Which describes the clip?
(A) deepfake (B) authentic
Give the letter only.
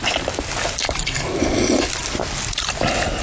B